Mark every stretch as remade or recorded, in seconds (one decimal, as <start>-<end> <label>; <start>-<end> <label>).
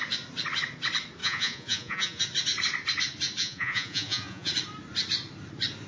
0.0-1.2 recorded; 1.2-2.2 remade; 2.2-3.4 recorded; 3.4-4.5 remade; 4.5-5.9 recorded